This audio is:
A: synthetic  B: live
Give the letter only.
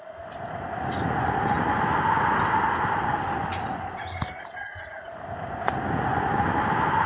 B